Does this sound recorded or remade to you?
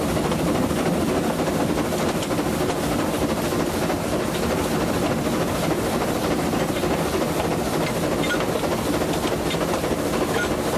recorded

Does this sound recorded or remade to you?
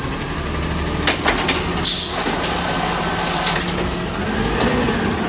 recorded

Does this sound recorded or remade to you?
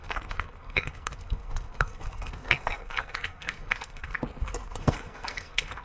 remade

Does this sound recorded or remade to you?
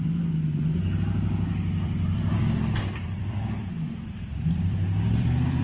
remade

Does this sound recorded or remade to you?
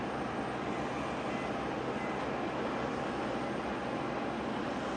recorded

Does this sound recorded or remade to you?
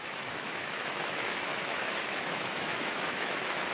remade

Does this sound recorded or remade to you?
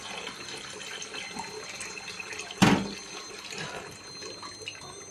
recorded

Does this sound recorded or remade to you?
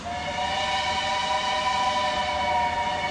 recorded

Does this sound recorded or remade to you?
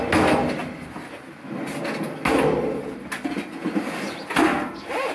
recorded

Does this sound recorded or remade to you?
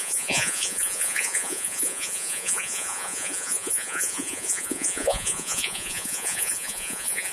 remade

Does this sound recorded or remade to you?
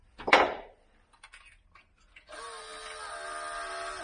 recorded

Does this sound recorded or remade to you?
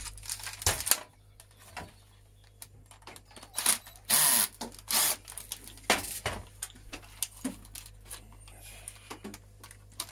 recorded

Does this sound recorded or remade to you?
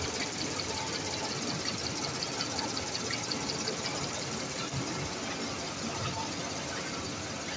recorded